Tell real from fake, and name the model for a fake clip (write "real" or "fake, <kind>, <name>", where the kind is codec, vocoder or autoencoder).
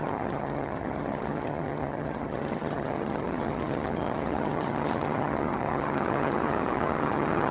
fake, vocoder, HiFi-GAN